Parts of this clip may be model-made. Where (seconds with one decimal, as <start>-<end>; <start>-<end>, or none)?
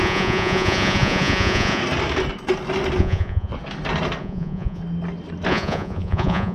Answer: 0.0-1.8; 3.0-3.5; 4.2-4.8; 5.5-6.5